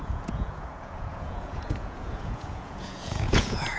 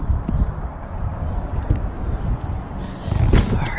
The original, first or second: second